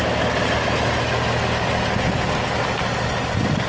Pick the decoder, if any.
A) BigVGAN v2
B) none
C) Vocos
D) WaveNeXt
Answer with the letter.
B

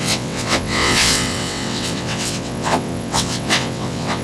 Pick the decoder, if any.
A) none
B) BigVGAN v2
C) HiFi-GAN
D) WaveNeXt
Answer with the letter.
D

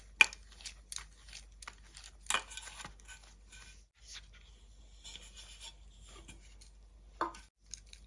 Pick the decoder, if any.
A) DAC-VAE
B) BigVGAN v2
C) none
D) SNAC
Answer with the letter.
C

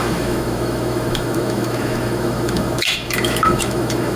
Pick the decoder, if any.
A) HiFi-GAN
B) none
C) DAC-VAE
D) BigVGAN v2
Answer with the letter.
C